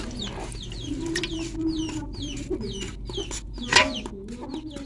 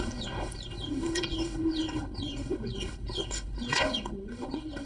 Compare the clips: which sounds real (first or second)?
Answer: first